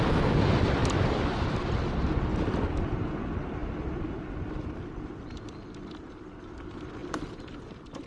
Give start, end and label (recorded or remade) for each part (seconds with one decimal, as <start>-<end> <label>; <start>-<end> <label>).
0.0-8.1 recorded